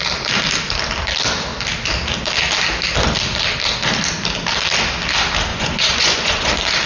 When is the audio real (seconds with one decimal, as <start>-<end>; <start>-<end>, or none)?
0.0-5.5; 6.5-6.9